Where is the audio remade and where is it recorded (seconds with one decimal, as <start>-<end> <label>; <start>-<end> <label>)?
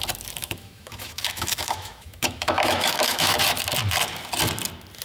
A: 0.0-0.4 recorded; 0.4-3.4 remade; 3.4-5.0 recorded